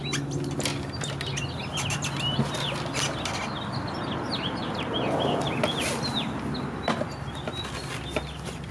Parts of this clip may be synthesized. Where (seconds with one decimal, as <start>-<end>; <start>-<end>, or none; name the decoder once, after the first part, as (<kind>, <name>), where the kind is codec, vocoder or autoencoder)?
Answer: none